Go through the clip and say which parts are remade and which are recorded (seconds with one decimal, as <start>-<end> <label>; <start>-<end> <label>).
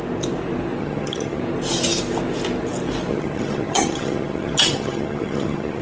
0.0-0.8 recorded; 0.8-1.4 remade; 1.4-3.1 recorded; 3.1-5.8 remade